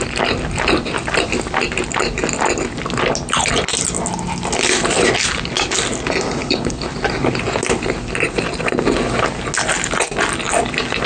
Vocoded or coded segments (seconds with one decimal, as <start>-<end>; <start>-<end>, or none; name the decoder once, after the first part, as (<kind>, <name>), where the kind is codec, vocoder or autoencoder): 6.4-6.9 (codec, HILCodec)